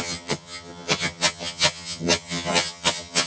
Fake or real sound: fake